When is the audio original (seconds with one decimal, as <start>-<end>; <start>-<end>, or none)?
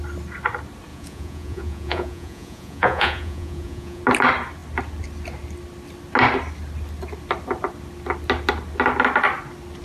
0.0-0.9; 4.0-9.8